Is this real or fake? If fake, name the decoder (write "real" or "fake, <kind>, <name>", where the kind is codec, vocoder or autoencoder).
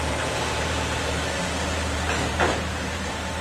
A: fake, vocoder, BigVGAN v2